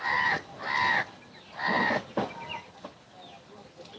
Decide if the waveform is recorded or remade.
recorded